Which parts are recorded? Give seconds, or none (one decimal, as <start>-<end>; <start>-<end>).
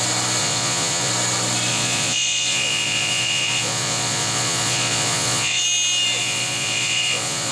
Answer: 0.0-0.4; 1.1-1.7; 5.6-6.2